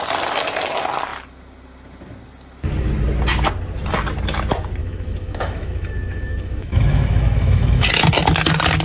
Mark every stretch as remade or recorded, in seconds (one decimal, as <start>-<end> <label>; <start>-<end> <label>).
0.0-4.8 recorded; 4.8-7.9 remade; 7.9-8.8 recorded